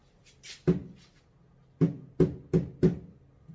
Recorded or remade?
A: recorded